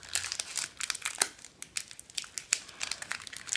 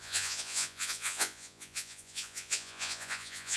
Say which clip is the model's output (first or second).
second